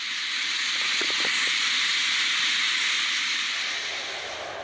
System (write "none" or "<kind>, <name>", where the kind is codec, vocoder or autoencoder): none